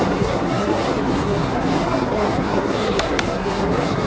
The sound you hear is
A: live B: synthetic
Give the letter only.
B